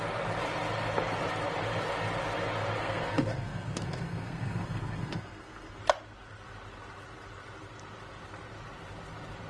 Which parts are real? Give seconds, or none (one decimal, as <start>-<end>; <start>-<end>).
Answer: 0.0-2.8; 5.8-9.5